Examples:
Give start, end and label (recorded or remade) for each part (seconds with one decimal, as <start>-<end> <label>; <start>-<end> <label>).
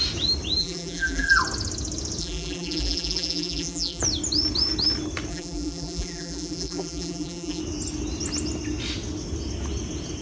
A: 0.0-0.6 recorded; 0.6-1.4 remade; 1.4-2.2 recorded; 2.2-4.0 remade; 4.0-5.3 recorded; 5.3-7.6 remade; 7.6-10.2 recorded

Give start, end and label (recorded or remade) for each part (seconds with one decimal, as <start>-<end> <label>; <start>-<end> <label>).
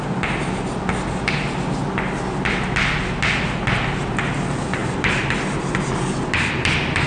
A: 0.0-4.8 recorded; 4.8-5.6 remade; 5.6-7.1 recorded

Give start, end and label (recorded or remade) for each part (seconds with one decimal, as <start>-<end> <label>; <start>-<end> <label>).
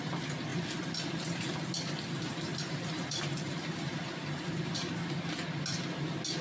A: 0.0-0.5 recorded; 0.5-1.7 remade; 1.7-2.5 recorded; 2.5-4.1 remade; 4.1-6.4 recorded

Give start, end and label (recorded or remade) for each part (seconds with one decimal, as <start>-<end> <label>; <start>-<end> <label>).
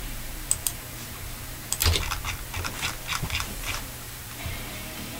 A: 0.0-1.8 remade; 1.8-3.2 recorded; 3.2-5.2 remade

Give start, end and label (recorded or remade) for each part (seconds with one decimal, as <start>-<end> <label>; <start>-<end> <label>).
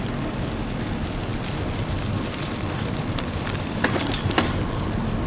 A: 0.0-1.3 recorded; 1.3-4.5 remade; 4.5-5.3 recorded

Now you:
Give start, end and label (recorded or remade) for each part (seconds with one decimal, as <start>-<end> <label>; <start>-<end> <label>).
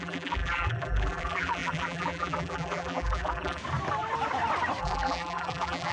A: 0.0-3.6 remade; 3.6-4.8 recorded; 4.8-5.9 remade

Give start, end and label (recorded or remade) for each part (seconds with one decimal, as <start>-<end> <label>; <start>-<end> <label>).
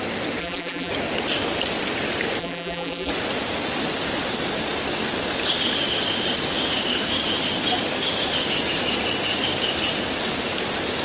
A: 0.0-0.4 recorded; 0.4-0.9 remade; 0.9-2.4 recorded; 2.4-3.1 remade; 3.1-11.0 recorded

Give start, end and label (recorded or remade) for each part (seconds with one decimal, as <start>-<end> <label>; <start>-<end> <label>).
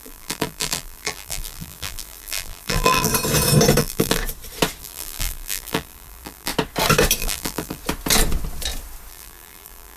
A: 0.0-3.1 remade; 3.1-3.8 recorded; 3.8-4.2 remade; 4.2-4.8 recorded; 4.8-6.5 remade; 6.5-7.2 recorded; 7.2-7.8 remade; 7.8-9.1 recorded; 9.1-10.0 remade